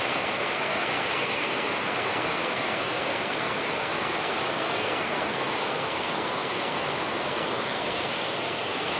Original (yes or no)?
no